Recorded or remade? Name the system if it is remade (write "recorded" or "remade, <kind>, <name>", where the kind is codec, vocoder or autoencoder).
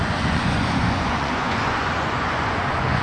remade, vocoder, Vocos